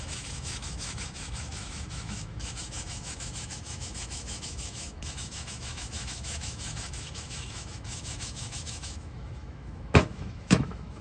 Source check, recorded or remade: remade